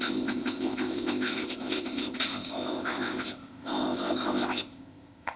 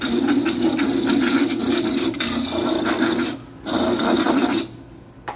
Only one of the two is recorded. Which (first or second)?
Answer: second